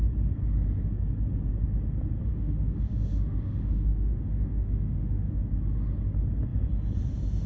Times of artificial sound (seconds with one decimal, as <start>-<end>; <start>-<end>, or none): 2.3-5.5